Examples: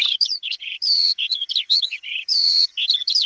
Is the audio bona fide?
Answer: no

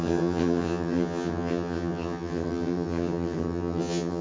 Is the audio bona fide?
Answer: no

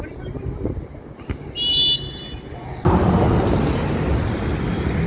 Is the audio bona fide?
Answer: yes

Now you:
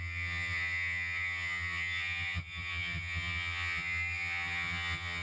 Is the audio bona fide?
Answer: no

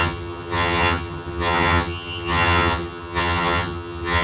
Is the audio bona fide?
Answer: no